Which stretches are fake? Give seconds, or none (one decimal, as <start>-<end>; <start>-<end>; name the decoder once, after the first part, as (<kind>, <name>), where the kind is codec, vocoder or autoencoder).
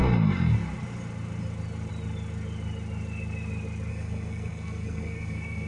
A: 3.9-5.7 (codec, SNAC)